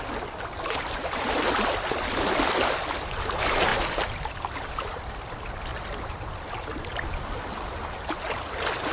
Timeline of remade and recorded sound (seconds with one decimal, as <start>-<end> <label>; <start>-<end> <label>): 0.0-3.7 recorded; 3.7-5.3 remade; 5.3-5.7 recorded; 5.7-7.9 remade; 7.9-8.9 recorded